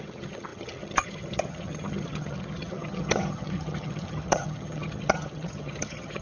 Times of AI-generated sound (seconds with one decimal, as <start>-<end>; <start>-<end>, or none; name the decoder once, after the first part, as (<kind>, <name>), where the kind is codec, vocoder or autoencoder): 0.0-6.2 (vocoder, HiFi-GAN)